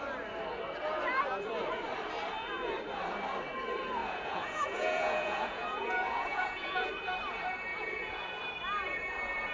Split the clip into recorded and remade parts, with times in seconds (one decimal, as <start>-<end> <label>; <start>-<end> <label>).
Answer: 0.0-4.0 recorded; 4.0-6.9 remade; 6.9-7.7 recorded; 7.7-8.4 remade; 8.4-9.5 recorded